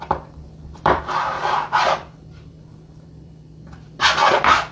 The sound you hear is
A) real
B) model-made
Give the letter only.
B